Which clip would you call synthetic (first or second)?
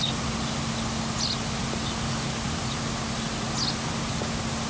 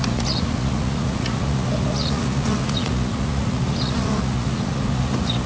second